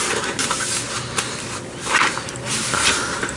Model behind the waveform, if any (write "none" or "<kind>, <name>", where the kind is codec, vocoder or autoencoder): none